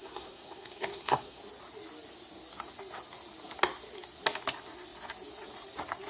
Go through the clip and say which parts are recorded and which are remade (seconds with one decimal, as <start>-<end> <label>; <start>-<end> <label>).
0.0-1.4 remade; 1.4-6.1 recorded